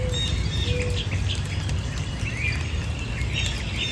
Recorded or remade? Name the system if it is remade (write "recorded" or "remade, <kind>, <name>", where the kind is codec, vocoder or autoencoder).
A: recorded